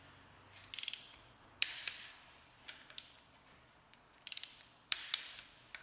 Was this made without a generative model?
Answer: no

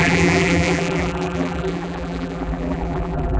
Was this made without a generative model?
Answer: no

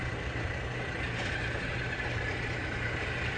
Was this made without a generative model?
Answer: no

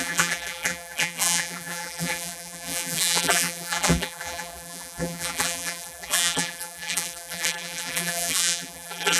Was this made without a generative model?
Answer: no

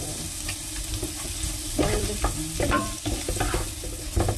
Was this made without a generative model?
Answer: no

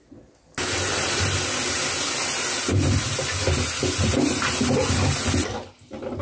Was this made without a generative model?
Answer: yes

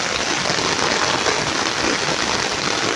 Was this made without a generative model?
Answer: yes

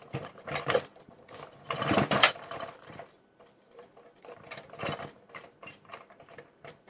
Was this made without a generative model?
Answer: no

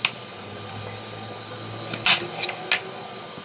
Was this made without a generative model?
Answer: yes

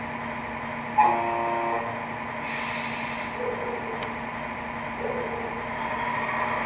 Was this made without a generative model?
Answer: yes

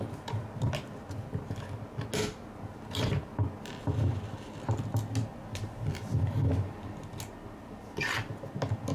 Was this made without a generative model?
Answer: yes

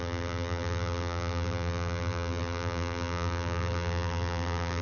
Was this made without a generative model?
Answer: no